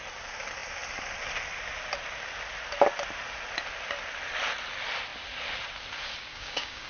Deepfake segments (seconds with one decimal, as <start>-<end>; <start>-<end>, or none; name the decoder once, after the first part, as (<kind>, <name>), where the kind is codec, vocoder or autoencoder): 6.3-6.9 (codec, DAC)